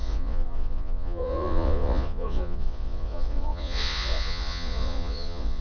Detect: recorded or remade remade